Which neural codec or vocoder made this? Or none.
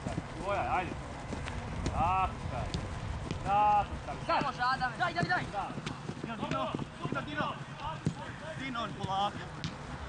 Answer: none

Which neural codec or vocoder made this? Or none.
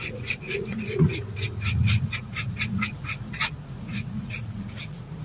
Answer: vocoder, Vocos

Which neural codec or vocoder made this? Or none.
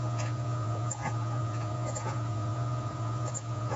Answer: vocoder, Vocos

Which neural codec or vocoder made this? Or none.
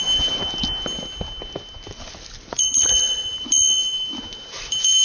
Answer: none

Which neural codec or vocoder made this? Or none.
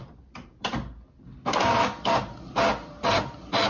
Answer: none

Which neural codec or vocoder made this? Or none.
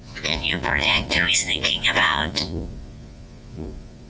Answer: vocoder, Vocos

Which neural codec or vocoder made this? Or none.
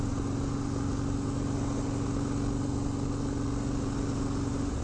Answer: none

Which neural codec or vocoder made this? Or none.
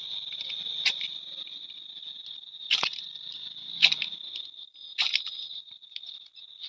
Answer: none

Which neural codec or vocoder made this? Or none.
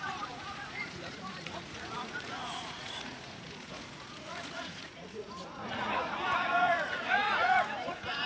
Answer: vocoder, Vocos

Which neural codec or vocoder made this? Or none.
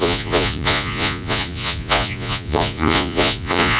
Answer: vocoder, Vocos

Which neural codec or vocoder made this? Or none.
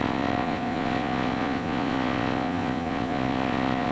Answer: vocoder, Vocos